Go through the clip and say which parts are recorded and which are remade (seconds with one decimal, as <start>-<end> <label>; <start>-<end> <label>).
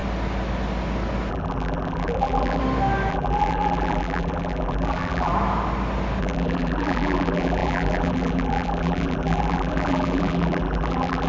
0.0-1.3 recorded; 1.3-2.6 remade; 2.6-3.1 recorded; 3.1-5.3 remade; 5.3-6.2 recorded; 6.2-11.3 remade